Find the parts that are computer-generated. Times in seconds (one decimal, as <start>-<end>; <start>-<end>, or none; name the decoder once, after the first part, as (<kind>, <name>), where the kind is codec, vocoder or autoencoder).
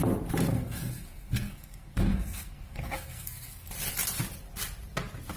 0.5-3.7 (codec, SNAC)